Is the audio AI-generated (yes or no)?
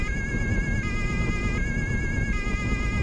yes